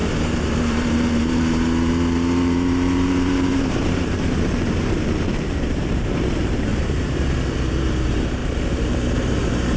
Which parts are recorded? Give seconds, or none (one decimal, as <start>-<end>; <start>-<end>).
none